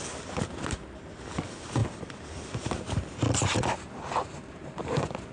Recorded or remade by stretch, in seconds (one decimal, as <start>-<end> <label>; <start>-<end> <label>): 0.0-5.3 recorded